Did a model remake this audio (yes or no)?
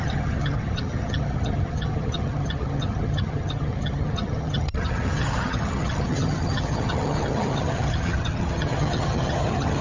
yes